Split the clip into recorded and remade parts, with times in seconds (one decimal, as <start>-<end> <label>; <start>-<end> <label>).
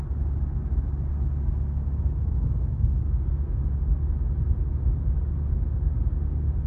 0.0-1.1 recorded; 1.1-3.6 remade; 3.6-6.7 recorded